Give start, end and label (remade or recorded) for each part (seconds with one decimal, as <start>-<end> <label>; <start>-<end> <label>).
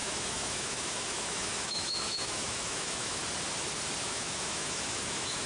0.0-3.2 remade; 3.2-4.0 recorded; 4.0-5.5 remade